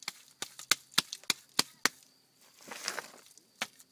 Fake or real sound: real